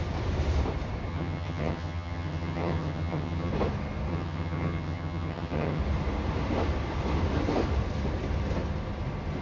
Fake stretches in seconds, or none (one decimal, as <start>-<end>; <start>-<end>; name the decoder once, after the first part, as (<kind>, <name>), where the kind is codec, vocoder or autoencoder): 1.1-3.5 (vocoder, HiFi-GAN); 4.1-5.8

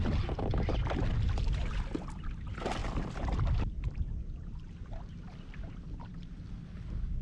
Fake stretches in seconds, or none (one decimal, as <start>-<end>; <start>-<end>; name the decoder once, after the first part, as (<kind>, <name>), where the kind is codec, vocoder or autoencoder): 2.8-5.0 (vocoder, BigVGAN v2)

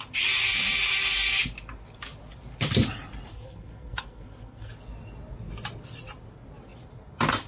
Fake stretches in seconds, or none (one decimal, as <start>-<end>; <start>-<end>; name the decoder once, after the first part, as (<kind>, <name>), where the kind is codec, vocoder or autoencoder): 3.3-4.7 (codec, SNAC)